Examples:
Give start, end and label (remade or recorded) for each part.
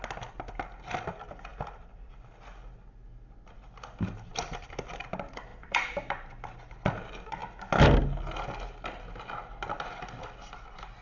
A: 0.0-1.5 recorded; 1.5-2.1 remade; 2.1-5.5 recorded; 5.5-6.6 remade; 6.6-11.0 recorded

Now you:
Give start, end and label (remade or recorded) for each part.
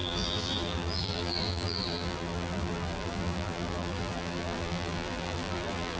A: 0.0-6.0 remade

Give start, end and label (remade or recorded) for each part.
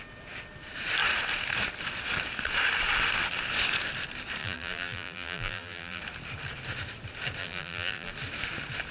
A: 0.0-4.4 recorded; 4.4-6.0 remade; 6.0-7.4 recorded; 7.4-8.1 remade; 8.1-8.9 recorded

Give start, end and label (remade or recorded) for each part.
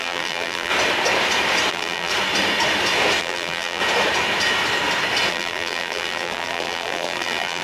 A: 0.0-0.7 remade; 0.7-1.7 recorded; 1.7-2.1 remade; 2.1-3.2 recorded; 3.2-3.8 remade; 3.8-5.3 recorded; 5.3-7.6 remade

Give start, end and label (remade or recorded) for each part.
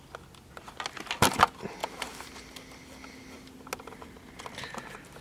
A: 0.0-5.2 recorded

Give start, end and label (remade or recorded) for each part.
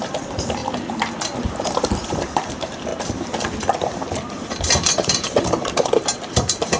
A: 0.0-0.6 remade; 0.6-1.4 recorded; 1.4-2.9 remade; 2.9-4.3 recorded; 4.3-6.8 remade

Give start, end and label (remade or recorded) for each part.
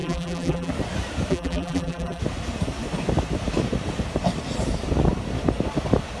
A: 0.0-0.7 remade; 0.7-1.3 recorded; 1.3-2.2 remade; 2.2-6.2 recorded